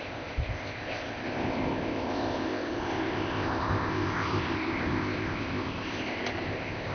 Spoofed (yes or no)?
yes